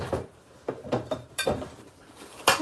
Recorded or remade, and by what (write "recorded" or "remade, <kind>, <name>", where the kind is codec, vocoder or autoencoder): remade, vocoder, BigVGAN v2